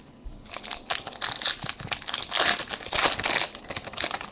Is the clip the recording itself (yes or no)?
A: yes